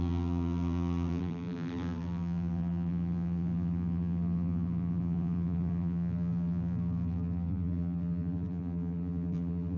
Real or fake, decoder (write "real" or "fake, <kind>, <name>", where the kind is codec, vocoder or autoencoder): fake, vocoder, BigVGAN v2